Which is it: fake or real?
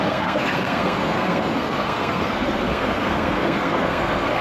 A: fake